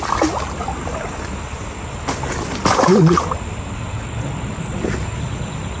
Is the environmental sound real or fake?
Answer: real